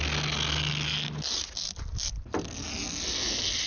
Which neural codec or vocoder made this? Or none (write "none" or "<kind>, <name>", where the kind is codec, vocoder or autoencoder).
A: none